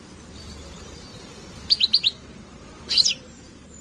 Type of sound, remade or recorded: remade